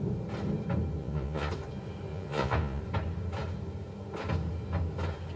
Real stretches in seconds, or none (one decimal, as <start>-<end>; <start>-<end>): 0.0-1.0; 1.5-2.1; 2.8-5.4